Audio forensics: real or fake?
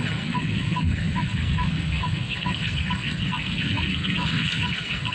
fake